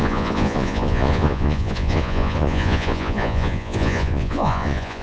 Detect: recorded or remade remade